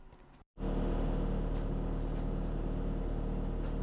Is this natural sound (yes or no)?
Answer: yes